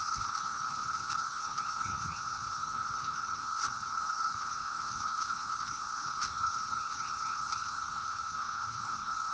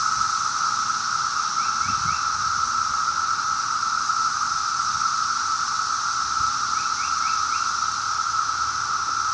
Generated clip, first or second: first